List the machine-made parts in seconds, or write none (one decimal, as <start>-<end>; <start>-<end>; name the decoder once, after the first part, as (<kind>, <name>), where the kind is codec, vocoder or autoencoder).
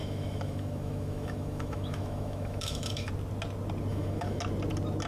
0.0-3.1 (autoencoder, DAC-VAE); 3.9-4.4